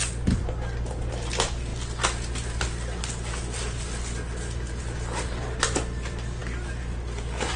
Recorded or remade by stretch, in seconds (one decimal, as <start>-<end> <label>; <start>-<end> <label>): 0.0-7.6 recorded